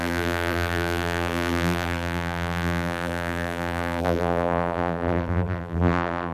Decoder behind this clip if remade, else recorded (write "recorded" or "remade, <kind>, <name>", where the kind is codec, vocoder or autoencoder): remade, vocoder, BigVGAN v2